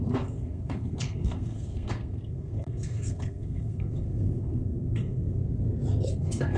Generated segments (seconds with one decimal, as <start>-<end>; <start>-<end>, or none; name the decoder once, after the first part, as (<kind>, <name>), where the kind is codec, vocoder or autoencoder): 0.0-5.4 (codec, SNAC); 6.1-6.6